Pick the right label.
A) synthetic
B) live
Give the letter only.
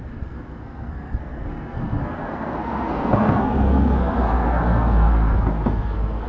A